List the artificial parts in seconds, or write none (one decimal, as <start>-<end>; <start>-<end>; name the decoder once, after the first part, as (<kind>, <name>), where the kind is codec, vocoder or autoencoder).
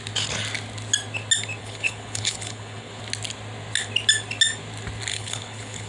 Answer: 1.6-3.0 (codec, HILCodec); 5.1-5.9